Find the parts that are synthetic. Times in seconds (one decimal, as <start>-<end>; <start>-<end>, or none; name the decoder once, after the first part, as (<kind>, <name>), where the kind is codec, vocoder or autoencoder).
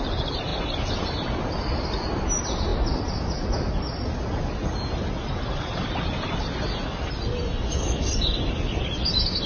none